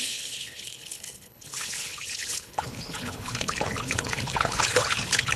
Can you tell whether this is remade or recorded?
remade